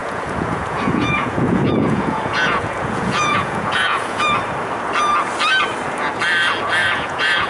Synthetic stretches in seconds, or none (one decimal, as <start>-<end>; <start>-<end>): 0.0-4.2; 6.8-7.5